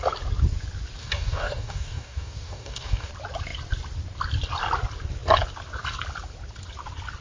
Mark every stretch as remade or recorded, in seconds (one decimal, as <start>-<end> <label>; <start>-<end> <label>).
0.0-1.0 recorded; 1.0-3.1 remade; 3.1-7.2 recorded